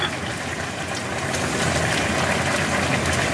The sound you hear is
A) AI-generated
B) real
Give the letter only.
B